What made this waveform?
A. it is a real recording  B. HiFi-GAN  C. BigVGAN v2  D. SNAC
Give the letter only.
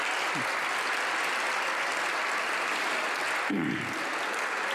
A